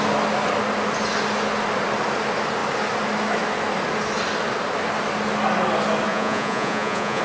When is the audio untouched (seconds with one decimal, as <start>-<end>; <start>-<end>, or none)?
0.0-6.1